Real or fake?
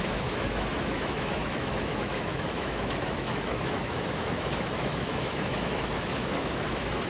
fake